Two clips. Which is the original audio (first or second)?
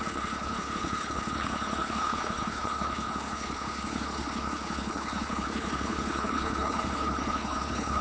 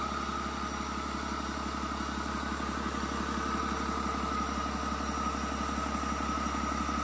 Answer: second